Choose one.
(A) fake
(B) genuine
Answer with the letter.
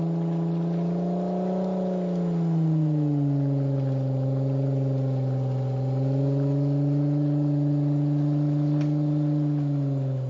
B